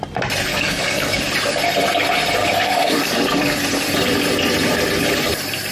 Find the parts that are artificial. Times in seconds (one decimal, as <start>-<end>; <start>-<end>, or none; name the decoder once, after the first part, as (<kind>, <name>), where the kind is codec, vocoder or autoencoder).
0.5-1.2 (codec, DAC); 2.4-3.6